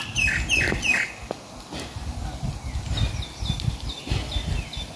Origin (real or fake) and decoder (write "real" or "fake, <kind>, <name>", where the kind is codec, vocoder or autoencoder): real